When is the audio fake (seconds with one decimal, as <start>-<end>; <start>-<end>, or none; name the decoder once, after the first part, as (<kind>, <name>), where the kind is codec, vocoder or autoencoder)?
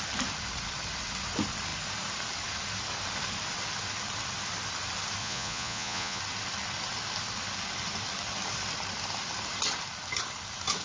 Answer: 5.2-6.2 (vocoder, Vocos)